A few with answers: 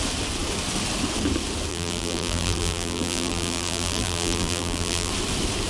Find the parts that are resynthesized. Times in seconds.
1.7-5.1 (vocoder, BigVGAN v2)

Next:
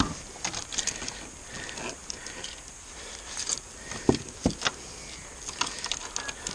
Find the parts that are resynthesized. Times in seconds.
none

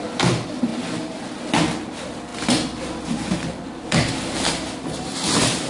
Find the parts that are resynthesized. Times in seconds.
0.0-0.7 (vocoder, BigVGAN v2); 1.8-5.7